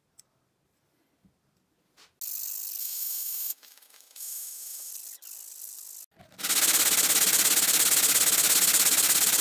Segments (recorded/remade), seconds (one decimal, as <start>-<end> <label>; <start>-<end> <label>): 0.0-2.8 recorded; 2.8-4.9 remade; 4.9-9.4 recorded